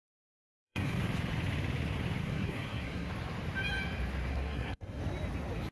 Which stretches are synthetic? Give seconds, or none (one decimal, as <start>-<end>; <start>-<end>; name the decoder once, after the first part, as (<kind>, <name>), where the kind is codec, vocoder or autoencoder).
0.0-1.0 (codec, SNAC); 2.2-3.1; 4.3-5.0